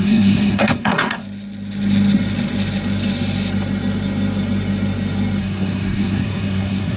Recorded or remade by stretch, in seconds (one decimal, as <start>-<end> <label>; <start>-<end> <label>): 0.0-1.2 remade; 1.2-5.4 recorded; 5.4-7.0 remade